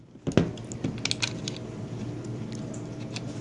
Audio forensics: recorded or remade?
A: recorded